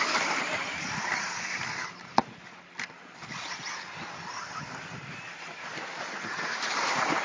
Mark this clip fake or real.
real